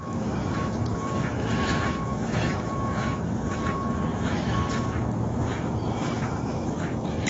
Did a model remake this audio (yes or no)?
yes